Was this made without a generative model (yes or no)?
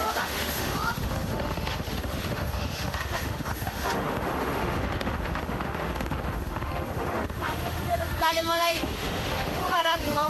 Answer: no